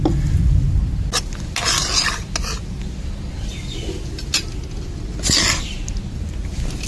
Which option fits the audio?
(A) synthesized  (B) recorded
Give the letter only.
B